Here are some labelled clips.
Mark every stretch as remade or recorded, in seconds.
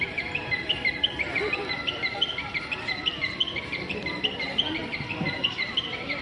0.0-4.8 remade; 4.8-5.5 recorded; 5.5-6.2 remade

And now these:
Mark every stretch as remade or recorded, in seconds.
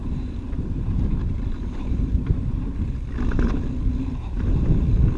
0.0-3.1 remade; 3.1-5.2 recorded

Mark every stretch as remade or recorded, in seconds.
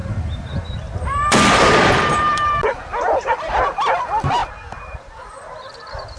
0.0-2.5 remade; 2.5-2.9 recorded; 2.9-3.6 remade; 3.6-4.4 recorded; 4.4-5.0 remade; 5.0-6.2 recorded